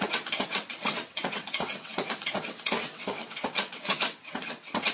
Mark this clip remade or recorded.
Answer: remade